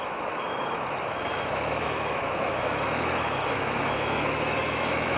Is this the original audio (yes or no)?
no